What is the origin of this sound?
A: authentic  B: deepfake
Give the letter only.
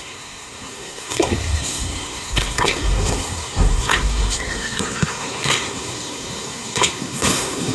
B